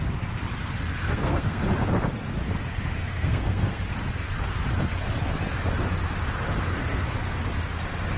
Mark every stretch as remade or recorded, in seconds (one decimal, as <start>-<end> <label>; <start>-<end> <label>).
0.0-1.0 recorded; 1.0-1.6 remade; 1.6-3.0 recorded; 3.0-3.8 remade; 3.8-8.2 recorded